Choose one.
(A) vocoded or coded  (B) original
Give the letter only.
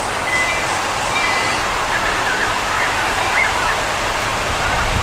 B